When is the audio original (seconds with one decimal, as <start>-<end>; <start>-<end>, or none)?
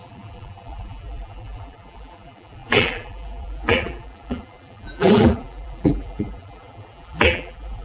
none